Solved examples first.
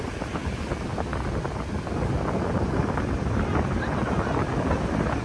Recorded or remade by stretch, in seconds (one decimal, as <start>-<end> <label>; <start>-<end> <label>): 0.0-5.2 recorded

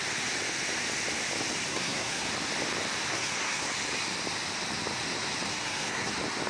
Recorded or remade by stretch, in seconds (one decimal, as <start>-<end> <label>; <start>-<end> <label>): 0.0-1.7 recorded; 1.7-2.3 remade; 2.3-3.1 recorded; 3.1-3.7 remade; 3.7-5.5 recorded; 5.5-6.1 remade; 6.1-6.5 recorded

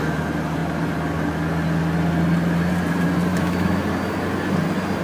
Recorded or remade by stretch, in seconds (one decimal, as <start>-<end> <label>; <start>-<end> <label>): 0.0-3.3 recorded; 3.3-3.8 remade; 3.8-5.0 recorded

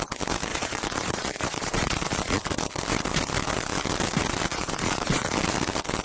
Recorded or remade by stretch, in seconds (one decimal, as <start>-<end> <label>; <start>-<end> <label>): 0.0-0.5 recorded; 0.5-2.4 remade; 2.4-4.5 recorded; 4.5-5.4 remade; 5.4-6.0 recorded

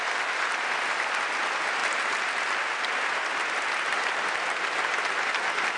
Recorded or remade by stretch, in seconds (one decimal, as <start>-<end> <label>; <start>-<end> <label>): 0.0-5.8 recorded

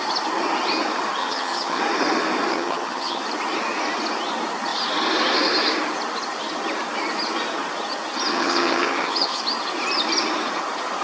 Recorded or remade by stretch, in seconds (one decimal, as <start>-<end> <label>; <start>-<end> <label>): 0.0-1.2 recorded; 1.2-1.8 remade; 1.8-2.5 recorded; 2.5-3.2 remade; 3.2-8.3 recorded; 8.3-9.4 remade; 9.4-11.0 recorded

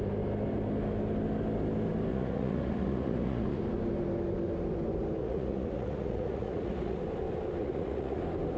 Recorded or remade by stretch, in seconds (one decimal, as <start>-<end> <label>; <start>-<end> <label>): 0.0-2.1 recorded; 2.1-3.6 remade; 3.6-5.2 recorded; 5.2-7.0 remade; 7.0-7.6 recorded; 7.6-8.2 remade; 8.2-8.6 recorded